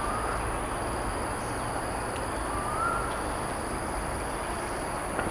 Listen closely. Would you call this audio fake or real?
real